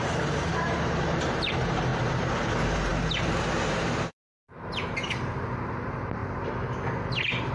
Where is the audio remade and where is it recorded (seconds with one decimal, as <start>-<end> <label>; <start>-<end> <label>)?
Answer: 0.0-6.2 remade; 6.2-7.5 recorded

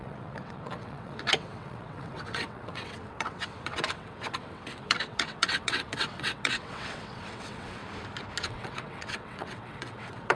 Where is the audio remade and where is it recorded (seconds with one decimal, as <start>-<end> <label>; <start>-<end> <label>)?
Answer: 0.0-7.8 remade; 7.8-8.4 recorded; 8.4-10.4 remade

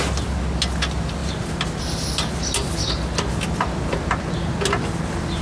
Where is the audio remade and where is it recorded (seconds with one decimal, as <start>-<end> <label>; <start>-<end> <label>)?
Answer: 0.0-5.4 recorded

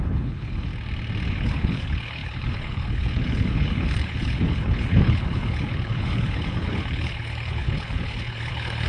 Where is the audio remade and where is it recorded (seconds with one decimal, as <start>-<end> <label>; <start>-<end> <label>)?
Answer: 0.0-0.7 remade; 0.7-1.3 recorded; 1.3-8.9 remade

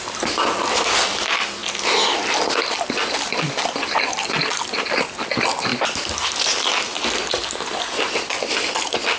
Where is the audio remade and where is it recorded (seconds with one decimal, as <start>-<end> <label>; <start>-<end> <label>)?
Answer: 0.0-1.6 recorded; 1.6-4.4 remade; 4.4-5.7 recorded; 5.7-8.5 remade; 8.5-9.2 recorded

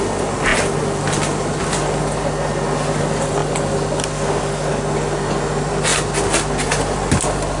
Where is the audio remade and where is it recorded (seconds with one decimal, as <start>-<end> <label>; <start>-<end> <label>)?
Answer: 0.0-7.6 recorded

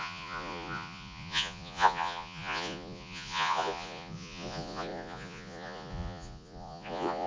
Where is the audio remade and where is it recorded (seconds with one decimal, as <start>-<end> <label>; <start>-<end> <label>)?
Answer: 0.0-7.3 remade